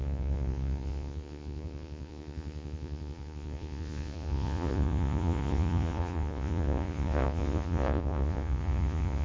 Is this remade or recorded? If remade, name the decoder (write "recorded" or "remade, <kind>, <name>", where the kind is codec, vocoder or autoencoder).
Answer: remade, vocoder, Vocos